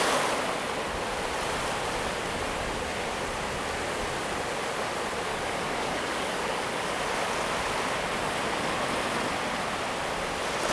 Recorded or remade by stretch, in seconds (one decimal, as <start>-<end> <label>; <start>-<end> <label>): 0.0-5.3 recorded; 5.3-7.0 remade; 7.0-10.7 recorded